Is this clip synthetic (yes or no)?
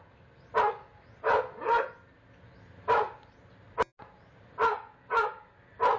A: no